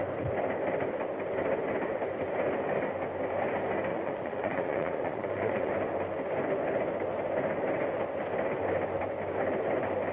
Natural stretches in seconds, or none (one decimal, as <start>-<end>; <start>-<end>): 0.0-3.9; 5.7-10.1